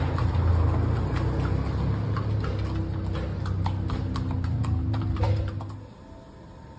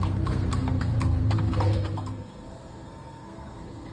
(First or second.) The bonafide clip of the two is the first